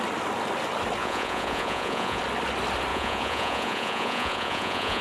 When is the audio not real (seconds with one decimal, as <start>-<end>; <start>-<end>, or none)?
1.0-2.2; 2.9-5.0